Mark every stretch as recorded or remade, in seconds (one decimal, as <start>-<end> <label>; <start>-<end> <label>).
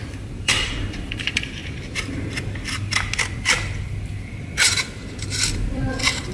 0.0-1.6 remade; 1.6-3.8 recorded; 3.8-6.3 remade